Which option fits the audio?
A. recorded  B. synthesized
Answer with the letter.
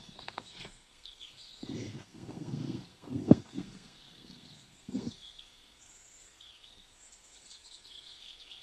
B